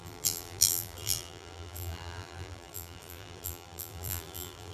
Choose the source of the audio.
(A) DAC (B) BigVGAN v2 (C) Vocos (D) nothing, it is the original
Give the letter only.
B